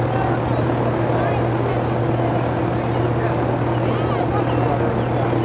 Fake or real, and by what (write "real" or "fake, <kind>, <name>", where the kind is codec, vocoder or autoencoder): real